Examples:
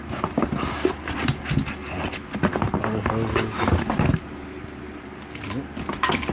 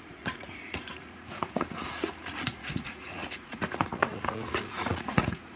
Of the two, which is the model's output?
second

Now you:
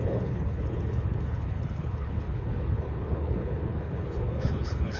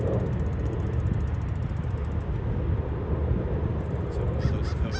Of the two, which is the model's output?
first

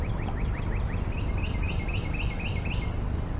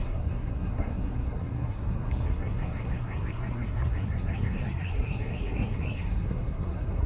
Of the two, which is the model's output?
second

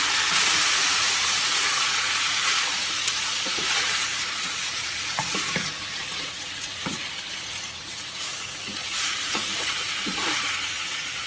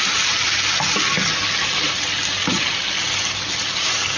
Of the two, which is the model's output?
first